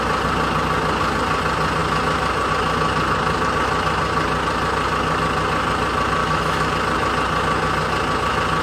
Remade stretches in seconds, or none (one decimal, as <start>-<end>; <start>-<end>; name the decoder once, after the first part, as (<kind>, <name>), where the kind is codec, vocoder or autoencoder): 6.2-6.7 (autoencoder, DAC-VAE)